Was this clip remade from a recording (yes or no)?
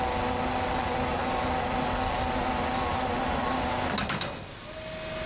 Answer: no